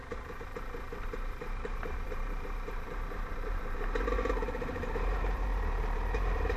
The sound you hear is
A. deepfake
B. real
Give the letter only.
A